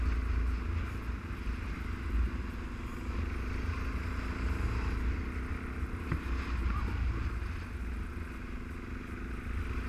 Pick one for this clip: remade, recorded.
recorded